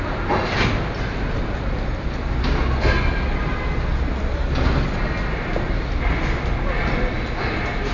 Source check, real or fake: real